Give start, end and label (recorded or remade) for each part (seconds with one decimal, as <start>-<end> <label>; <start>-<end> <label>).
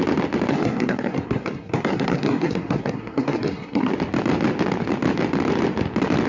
0.0-0.5 recorded; 0.5-3.9 remade; 3.9-6.3 recorded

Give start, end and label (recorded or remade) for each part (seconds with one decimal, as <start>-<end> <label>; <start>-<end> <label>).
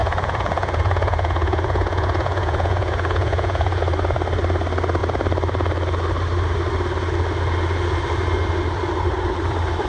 0.0-3.8 remade; 3.8-9.9 recorded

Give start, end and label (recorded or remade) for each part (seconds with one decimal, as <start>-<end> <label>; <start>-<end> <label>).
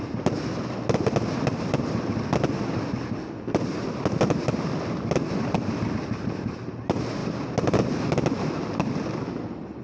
0.0-9.8 recorded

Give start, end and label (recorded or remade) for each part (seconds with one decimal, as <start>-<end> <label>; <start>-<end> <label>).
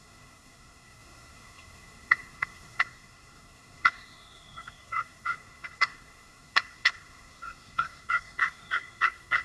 0.0-9.4 remade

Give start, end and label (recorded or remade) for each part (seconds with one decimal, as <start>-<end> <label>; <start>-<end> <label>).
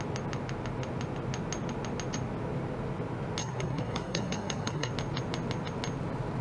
0.0-3.4 recorded; 3.4-4.9 remade; 4.9-6.4 recorded